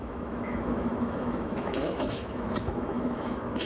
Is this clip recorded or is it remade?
remade